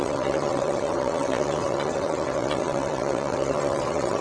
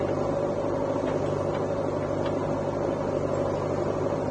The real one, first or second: second